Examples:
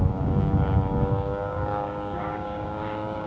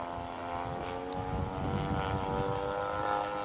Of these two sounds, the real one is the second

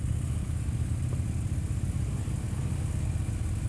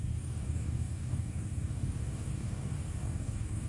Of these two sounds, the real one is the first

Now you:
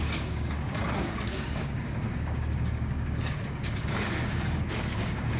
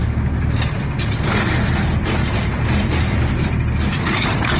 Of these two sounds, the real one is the second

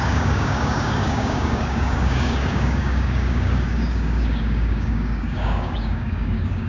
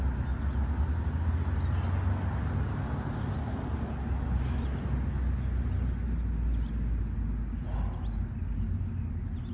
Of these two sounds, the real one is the second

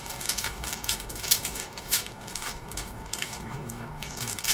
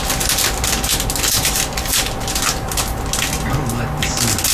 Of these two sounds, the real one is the second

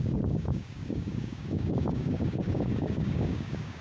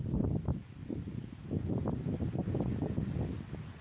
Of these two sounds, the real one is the second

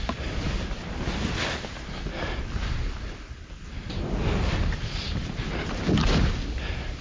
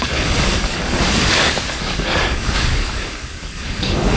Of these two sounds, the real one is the first